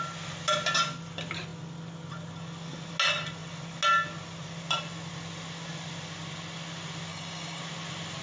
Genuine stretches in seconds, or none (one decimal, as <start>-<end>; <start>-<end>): 0.0-7.1; 7.6-8.2